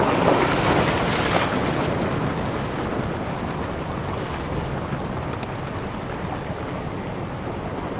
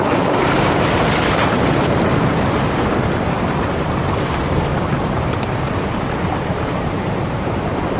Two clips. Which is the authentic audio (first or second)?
first